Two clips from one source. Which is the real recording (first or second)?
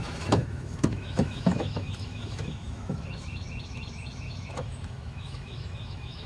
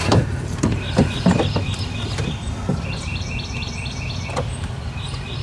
second